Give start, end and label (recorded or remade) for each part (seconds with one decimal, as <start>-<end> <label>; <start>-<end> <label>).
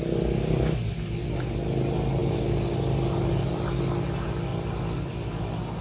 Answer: 0.0-5.8 recorded